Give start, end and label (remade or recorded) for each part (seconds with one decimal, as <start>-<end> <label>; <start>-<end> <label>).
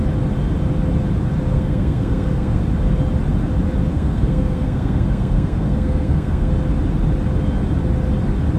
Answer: 0.0-1.5 recorded; 1.5-2.6 remade; 2.6-3.9 recorded; 3.9-6.5 remade; 6.5-8.6 recorded